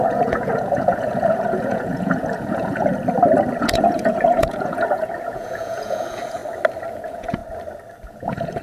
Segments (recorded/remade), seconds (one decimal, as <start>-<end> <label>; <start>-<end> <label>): 0.0-2.9 remade; 2.9-3.6 recorded; 3.6-6.4 remade; 6.4-6.9 recorded; 6.9-7.4 remade; 7.4-8.1 recorded; 8.1-8.6 remade